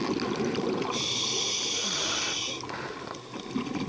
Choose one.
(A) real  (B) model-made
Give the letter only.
A